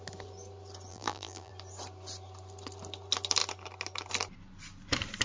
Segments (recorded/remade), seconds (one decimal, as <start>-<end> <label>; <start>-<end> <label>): 0.0-0.9 recorded; 0.9-1.5 remade; 1.5-5.2 recorded